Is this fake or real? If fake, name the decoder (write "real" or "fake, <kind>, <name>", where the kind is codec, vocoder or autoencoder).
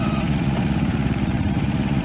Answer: fake, vocoder, Vocos